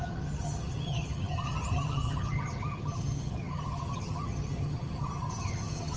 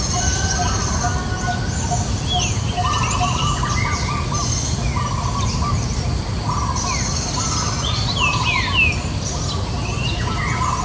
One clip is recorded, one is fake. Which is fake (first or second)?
first